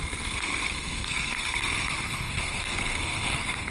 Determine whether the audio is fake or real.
fake